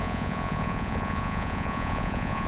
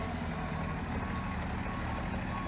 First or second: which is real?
second